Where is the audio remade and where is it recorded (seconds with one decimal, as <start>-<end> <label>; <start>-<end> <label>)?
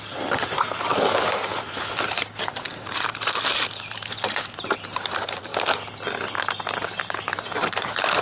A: 0.0-5.5 remade; 5.5-7.0 recorded; 7.0-8.2 remade